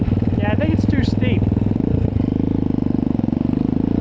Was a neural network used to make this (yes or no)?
no